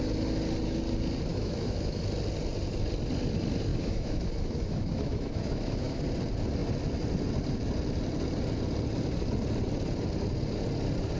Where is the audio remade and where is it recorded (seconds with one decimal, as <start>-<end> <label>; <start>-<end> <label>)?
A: 0.0-1.3 recorded; 1.3-2.0 remade; 2.0-3.7 recorded; 3.7-6.0 remade; 6.0-11.2 recorded